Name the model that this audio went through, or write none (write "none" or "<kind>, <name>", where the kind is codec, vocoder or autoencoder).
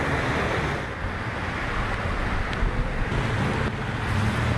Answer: none